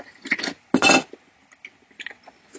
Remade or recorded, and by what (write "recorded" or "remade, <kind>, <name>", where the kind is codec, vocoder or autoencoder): recorded